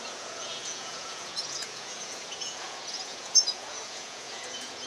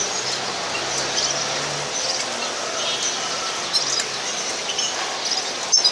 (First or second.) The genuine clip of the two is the second